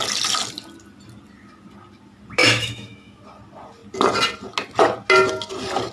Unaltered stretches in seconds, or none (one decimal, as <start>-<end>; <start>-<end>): 0.0-2.4; 3.2-5.9